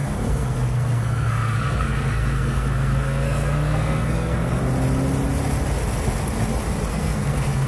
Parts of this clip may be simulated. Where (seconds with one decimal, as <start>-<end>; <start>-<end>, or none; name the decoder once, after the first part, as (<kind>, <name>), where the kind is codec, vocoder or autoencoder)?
0.0-4.6 (codec, SNAC); 6.9-7.7